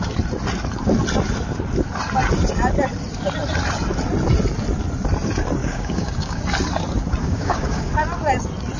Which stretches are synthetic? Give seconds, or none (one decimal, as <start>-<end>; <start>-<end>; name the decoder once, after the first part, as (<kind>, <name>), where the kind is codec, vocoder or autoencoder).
5.6-6.4 (codec, DAC); 7.2-7.9